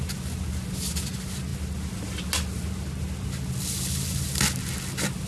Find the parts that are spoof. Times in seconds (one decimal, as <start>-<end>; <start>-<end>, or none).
none